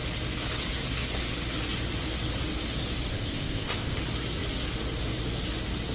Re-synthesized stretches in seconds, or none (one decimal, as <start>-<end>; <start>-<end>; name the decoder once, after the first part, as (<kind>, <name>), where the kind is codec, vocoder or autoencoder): 3.1-4.0 (codec, ZipCodec)